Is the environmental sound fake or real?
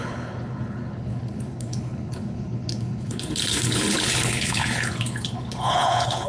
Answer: fake